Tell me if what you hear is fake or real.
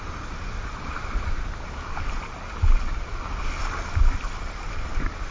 real